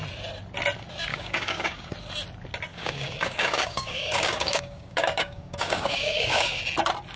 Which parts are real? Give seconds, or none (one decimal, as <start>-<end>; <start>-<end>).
0.0-1.1; 1.9-2.7; 6.6-7.2